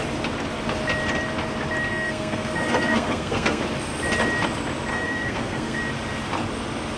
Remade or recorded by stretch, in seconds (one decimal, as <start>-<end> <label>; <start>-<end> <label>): 0.0-1.9 recorded; 1.9-3.6 remade; 3.6-4.9 recorded; 4.9-5.8 remade; 5.8-7.0 recorded